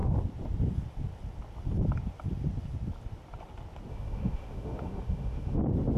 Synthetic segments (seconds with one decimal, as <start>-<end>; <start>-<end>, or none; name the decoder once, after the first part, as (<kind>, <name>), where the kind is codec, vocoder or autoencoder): 3.9-5.6 (autoencoder, DAC-VAE)